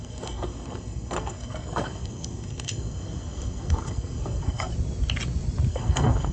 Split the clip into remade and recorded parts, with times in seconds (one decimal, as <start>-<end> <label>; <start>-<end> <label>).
0.0-4.7 remade; 4.7-5.7 recorded; 5.7-6.3 remade